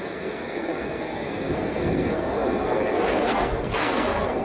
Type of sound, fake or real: fake